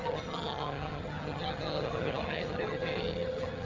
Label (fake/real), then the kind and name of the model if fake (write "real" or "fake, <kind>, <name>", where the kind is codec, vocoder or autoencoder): fake, vocoder, HiFi-GAN